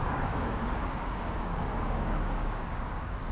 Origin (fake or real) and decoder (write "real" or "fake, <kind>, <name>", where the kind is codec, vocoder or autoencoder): fake, codec, DAC